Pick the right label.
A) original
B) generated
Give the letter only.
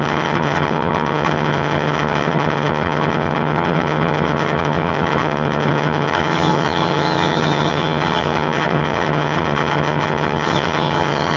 B